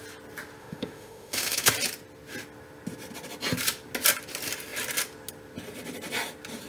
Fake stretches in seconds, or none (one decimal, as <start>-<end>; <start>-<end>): 0.6-1.7